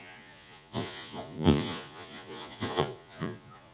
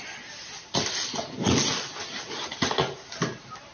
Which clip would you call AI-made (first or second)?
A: first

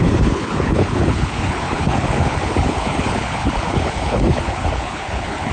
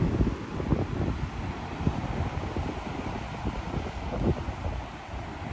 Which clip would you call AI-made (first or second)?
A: first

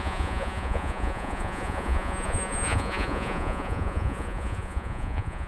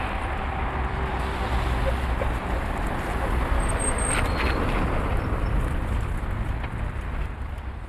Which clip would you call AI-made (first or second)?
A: first